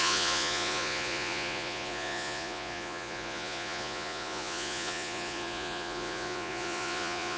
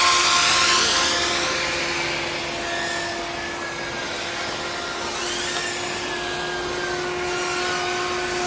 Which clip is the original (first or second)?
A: second